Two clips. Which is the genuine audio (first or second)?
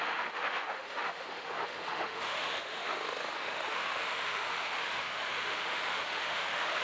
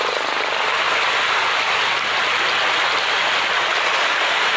second